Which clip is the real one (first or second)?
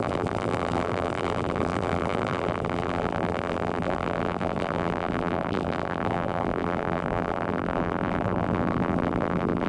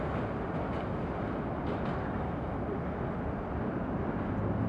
second